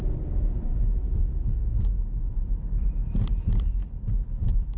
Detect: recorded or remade recorded